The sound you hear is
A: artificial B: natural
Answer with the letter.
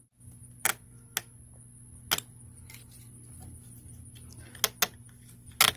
B